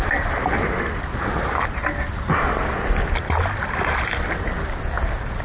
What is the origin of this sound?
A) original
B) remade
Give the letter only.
A